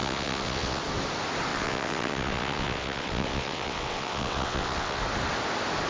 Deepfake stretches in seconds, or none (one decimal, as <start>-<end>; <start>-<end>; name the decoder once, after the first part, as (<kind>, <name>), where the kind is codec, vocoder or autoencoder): 0.0-0.8 (vocoder, WaveNeXt); 1.5-5.0